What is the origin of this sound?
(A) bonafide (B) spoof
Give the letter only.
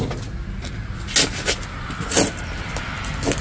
A